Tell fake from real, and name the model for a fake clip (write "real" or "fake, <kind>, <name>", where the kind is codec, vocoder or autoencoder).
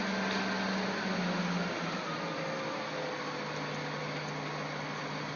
real